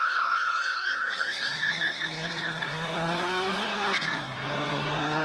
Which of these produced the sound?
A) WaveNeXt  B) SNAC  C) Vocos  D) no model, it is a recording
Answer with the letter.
B